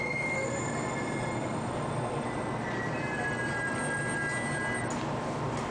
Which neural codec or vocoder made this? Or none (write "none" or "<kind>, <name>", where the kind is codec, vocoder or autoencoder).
none